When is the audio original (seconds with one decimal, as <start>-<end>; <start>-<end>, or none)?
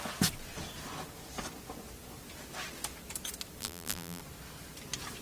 0.0-3.6; 4.2-5.2